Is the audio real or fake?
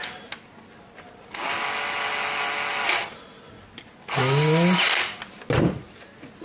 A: real